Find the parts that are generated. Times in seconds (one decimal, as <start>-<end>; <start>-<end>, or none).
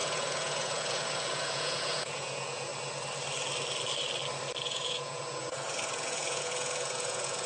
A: 0.0-2.7; 4.6-7.5